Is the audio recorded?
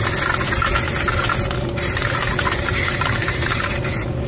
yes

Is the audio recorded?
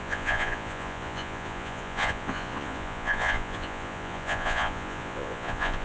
no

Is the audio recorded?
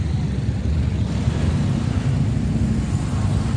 yes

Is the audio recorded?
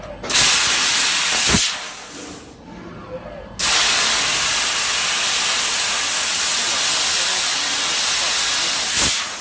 yes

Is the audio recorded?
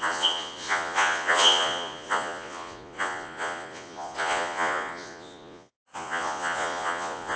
no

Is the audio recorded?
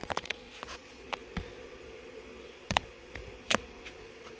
no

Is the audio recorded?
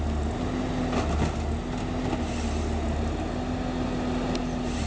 yes